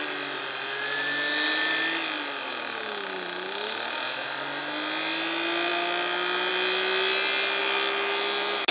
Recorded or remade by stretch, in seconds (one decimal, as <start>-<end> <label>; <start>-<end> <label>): 0.0-8.7 recorded